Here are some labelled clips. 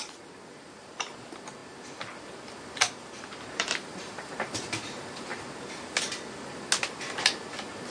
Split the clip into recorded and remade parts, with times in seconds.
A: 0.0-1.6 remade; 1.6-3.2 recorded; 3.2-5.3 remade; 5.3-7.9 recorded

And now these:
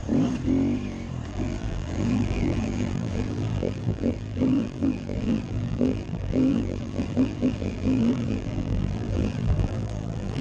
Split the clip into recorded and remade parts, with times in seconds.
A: 0.0-1.3 recorded; 1.3-10.4 remade

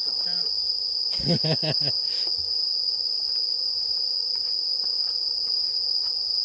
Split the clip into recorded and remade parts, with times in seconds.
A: 0.0-6.4 recorded

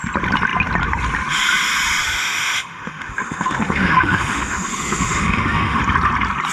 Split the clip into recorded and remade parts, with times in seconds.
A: 0.0-2.0 recorded; 2.0-5.8 remade; 5.8-6.5 recorded